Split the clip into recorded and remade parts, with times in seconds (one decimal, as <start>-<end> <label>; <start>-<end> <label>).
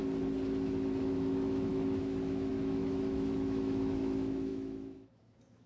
0.0-1.0 recorded; 1.0-5.7 remade